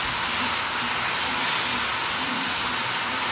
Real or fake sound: real